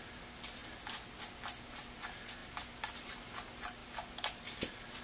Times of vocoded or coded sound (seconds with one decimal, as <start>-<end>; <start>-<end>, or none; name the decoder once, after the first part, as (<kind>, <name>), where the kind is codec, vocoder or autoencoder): none